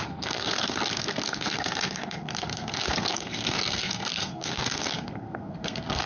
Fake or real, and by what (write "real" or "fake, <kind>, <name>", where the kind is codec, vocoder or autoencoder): fake, codec, SNAC